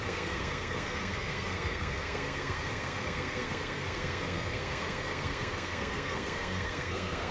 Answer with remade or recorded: remade